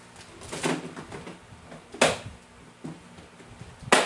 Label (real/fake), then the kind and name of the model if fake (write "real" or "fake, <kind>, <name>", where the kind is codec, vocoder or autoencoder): real